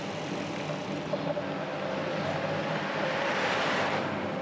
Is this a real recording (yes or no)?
yes